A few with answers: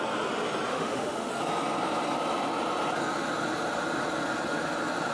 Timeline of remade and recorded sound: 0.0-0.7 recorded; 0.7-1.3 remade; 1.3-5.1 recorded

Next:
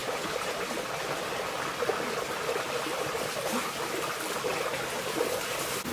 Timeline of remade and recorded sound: 0.0-5.9 recorded

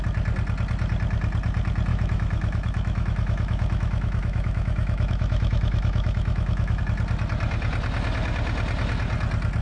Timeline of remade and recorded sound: 0.0-1.9 recorded; 1.9-6.8 remade; 6.8-9.6 recorded

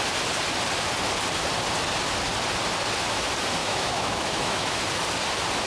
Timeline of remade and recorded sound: 0.0-3.6 recorded; 3.6-4.8 remade; 4.8-5.7 recorded

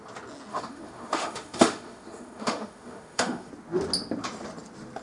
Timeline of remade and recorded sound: 0.0-0.5 recorded; 0.5-3.5 remade; 3.5-5.0 recorded

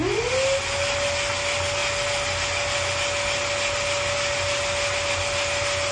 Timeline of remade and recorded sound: 0.0-5.9 recorded